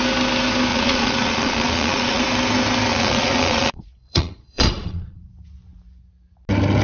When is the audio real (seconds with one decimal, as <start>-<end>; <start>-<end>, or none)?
0.0-0.7; 2.2-2.9; 5.3-6.8